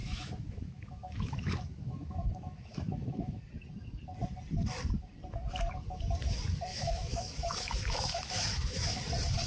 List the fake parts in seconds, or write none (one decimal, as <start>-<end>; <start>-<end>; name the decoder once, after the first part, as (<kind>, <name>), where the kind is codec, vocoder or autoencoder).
0.0-3.4 (autoencoder, DAC-VAE); 6.7-9.0